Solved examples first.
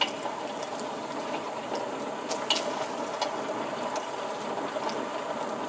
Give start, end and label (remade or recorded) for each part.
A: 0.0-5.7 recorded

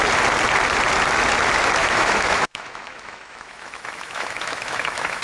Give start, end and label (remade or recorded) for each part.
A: 0.0-1.8 recorded; 1.8-5.2 remade

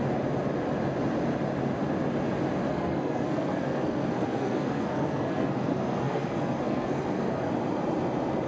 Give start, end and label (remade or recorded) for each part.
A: 0.0-2.7 recorded; 2.7-7.5 remade; 7.5-8.5 recorded

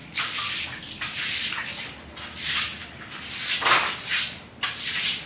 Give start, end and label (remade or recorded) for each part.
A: 0.0-5.3 recorded

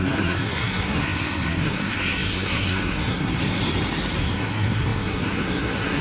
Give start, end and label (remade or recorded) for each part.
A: 0.0-3.6 remade; 3.6-4.2 recorded; 4.2-6.0 remade